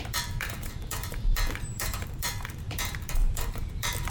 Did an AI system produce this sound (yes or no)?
yes